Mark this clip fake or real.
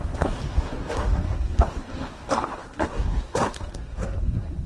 fake